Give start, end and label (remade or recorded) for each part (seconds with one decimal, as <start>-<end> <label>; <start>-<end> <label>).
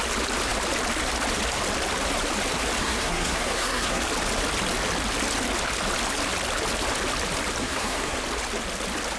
0.0-2.8 recorded; 2.8-4.0 remade; 4.0-7.6 recorded; 7.6-8.2 remade; 8.2-9.2 recorded